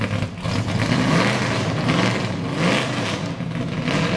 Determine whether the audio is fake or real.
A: real